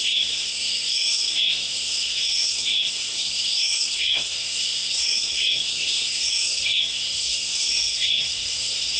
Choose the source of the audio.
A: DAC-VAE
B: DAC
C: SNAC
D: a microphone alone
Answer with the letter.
C